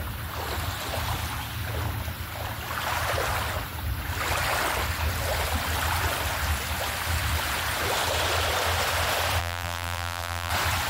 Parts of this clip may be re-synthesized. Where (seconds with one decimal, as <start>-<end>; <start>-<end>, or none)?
9.4-10.5